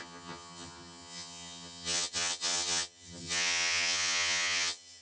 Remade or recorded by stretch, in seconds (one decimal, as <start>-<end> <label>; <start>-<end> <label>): 0.0-5.0 remade